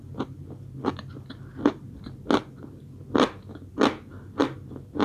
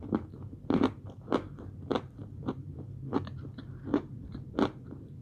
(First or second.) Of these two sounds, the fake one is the second